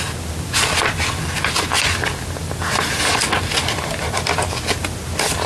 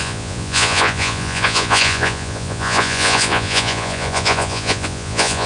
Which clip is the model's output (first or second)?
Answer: second